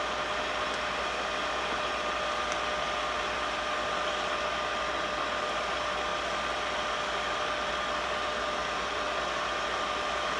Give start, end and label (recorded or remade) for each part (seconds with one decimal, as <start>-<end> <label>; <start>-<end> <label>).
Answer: 0.0-10.4 recorded